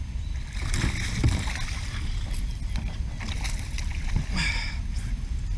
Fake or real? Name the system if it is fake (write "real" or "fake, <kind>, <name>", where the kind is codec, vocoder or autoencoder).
real